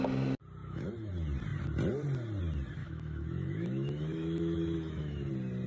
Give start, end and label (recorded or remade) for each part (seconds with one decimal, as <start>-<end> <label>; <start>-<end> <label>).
0.0-0.6 recorded; 0.6-1.1 remade; 1.1-2.8 recorded; 2.8-5.3 remade; 5.3-5.7 recorded